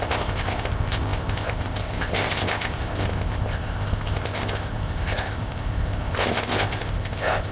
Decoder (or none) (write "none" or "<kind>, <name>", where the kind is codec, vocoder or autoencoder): codec, ZipCodec